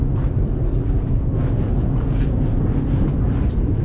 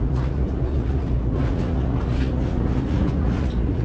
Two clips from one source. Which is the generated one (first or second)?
second